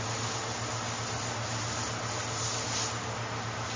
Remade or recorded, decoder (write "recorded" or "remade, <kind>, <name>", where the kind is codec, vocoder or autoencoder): recorded